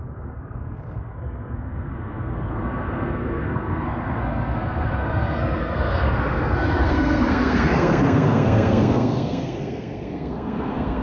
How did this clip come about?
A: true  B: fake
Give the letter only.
B